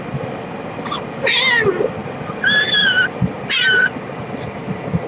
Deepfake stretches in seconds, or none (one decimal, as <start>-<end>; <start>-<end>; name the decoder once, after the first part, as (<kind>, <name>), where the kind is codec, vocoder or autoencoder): none